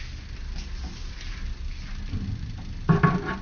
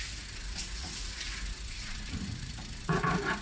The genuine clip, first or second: first